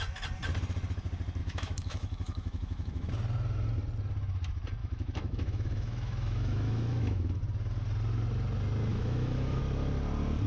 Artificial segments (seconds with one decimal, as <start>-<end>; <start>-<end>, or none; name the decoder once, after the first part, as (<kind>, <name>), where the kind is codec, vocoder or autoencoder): 1.4-3.1 (autoencoder, DAC-VAE); 4.8-7.4; 8.9-9.6